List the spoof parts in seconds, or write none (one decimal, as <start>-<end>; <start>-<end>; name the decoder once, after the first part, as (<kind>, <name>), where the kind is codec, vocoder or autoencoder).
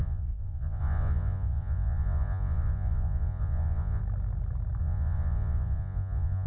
0.0-4.0 (vocoder, Vocos); 4.8-6.5